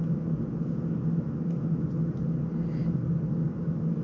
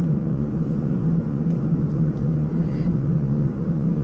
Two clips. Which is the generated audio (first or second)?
second